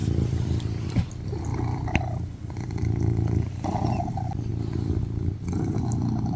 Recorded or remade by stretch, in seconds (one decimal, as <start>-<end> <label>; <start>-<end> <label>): 0.0-6.4 remade